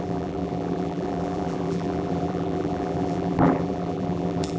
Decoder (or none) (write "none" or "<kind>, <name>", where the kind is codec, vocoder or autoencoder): vocoder, BigVGAN v2